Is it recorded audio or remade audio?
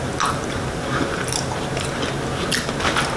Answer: recorded